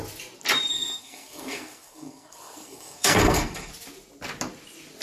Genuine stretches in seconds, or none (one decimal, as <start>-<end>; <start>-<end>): 0.0-0.7; 3.7-5.0